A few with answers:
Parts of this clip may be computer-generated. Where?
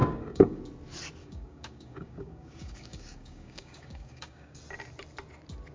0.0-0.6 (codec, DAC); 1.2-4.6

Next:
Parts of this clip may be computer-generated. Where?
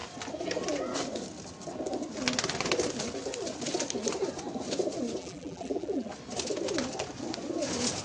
5.2-6.1 (vocoder, BigVGAN v2)